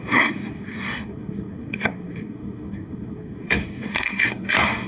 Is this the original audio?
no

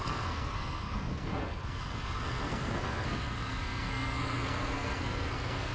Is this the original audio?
no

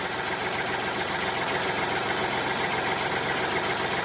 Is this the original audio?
yes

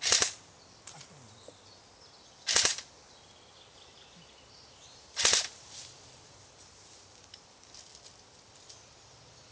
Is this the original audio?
yes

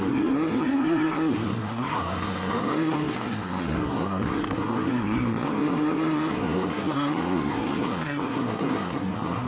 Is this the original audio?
no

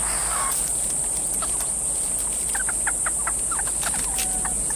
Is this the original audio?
yes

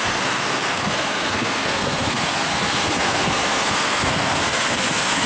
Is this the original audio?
no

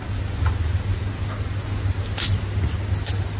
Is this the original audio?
yes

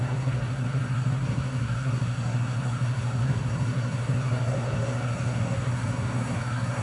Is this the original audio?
no